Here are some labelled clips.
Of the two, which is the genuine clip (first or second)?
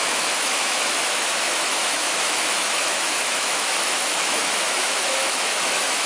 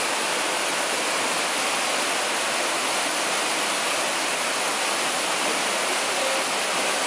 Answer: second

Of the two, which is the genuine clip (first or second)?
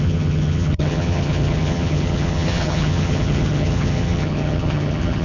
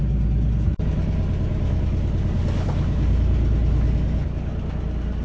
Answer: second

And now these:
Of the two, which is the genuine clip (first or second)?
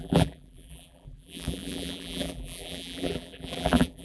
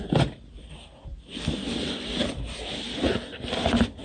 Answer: second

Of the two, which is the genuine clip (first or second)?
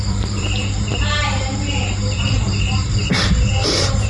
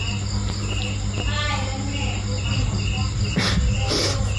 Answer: second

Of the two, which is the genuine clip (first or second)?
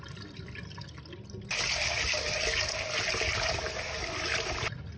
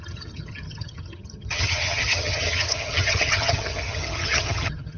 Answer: first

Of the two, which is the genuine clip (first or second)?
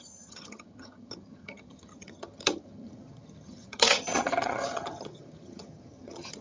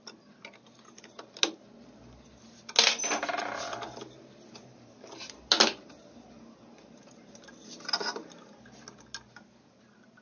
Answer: second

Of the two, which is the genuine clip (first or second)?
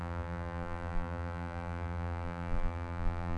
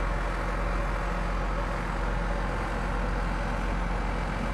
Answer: second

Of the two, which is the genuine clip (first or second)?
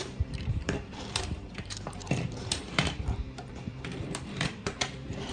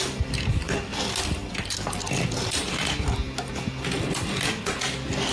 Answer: second